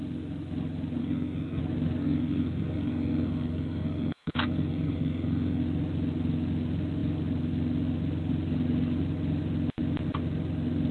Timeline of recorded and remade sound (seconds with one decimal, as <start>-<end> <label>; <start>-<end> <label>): 0.0-1.0 recorded; 1.0-1.6 remade; 1.6-2.0 recorded; 2.0-5.6 remade; 5.6-10.9 recorded